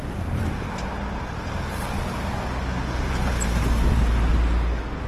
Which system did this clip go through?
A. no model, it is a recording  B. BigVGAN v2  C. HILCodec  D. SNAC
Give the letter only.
A